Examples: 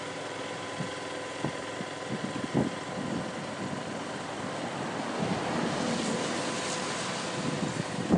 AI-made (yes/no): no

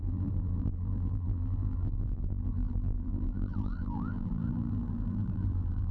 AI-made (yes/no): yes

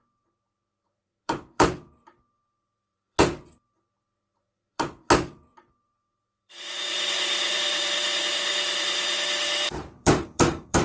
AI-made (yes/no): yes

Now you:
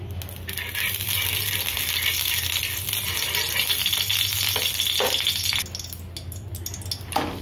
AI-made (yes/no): no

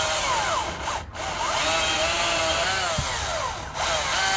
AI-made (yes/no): no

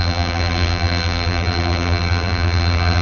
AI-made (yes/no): yes